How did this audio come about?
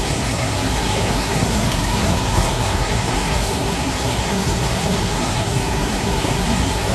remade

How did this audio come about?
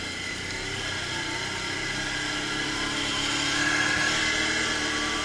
recorded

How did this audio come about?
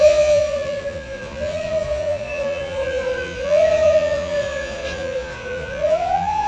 remade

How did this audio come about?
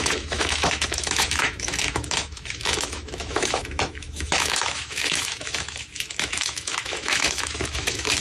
remade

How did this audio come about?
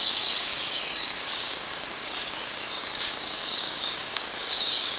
remade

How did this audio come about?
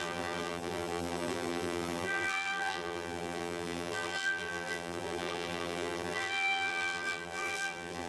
remade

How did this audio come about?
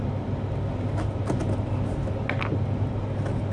recorded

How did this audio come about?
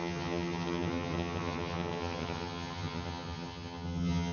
remade